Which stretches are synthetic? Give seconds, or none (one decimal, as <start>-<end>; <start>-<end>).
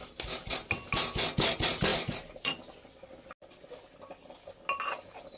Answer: 1.9-2.5